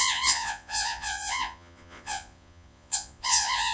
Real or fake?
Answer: fake